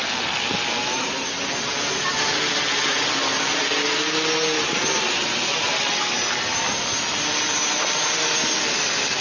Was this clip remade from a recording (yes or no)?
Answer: no